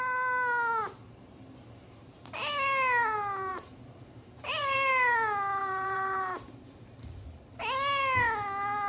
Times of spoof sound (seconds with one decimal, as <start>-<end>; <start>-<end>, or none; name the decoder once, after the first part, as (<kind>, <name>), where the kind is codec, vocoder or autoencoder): 3.5-4.9 (vocoder, BigVGAN v2); 5.6-7.4